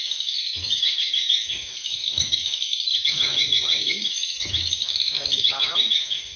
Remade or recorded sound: remade